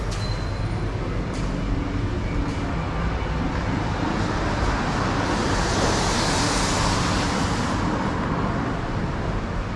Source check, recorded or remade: recorded